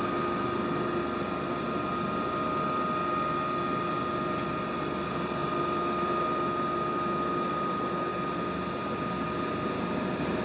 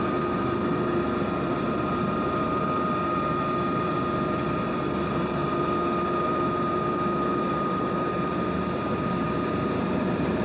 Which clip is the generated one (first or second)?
second